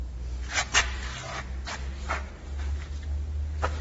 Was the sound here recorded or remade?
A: recorded